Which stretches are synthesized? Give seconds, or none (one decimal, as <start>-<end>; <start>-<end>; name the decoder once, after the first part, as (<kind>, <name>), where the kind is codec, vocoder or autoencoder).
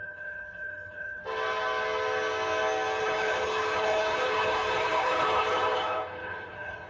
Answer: 0.0-1.2 (codec, HILCodec); 3.0-6.9